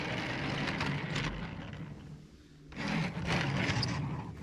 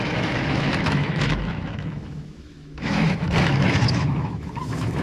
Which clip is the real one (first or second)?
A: first